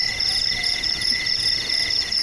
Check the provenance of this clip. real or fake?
real